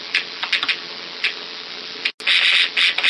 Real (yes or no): yes